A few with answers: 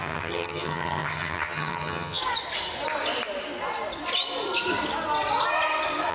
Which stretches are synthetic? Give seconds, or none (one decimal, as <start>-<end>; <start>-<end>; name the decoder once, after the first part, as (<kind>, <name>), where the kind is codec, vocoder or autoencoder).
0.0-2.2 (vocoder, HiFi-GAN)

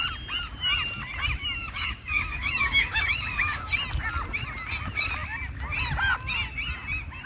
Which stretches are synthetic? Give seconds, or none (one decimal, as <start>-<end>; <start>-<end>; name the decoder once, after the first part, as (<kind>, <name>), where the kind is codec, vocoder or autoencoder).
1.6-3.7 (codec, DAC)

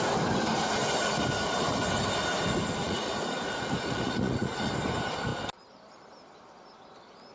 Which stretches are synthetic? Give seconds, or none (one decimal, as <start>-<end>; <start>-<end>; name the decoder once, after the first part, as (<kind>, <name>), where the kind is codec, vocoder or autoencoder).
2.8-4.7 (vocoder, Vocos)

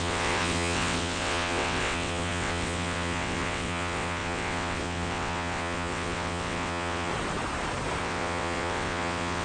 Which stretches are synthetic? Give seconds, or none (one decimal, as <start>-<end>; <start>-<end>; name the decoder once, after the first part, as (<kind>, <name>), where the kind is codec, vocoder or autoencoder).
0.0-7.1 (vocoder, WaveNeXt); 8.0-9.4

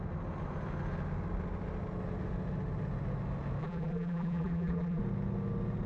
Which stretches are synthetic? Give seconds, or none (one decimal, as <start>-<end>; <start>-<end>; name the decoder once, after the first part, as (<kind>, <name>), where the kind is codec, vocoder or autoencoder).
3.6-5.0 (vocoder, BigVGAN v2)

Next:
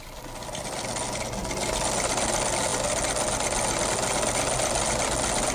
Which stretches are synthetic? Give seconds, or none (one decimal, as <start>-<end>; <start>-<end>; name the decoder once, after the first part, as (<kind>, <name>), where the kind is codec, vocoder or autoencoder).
none

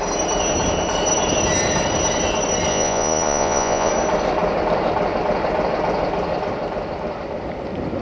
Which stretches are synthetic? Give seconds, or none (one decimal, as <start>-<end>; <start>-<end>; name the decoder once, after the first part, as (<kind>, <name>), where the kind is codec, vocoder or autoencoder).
2.7-3.9 (vocoder, Vocos)